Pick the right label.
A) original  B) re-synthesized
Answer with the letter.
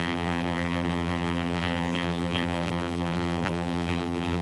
B